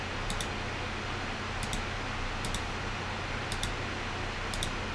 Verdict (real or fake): real